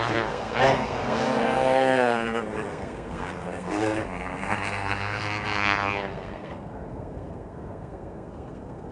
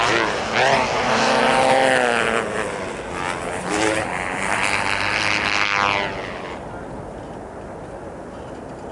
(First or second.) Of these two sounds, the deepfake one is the first